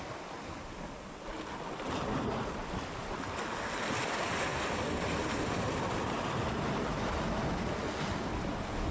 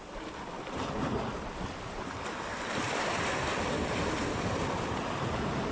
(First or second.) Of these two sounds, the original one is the first